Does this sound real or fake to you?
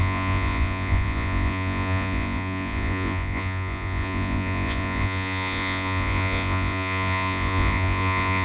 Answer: fake